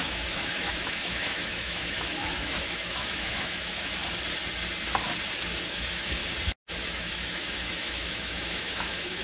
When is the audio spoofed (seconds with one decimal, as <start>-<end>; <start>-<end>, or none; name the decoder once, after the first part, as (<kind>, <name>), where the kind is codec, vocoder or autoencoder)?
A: 0.0-4.0 (autoencoder, DAC-VAE); 5.7-6.2; 6.9-9.2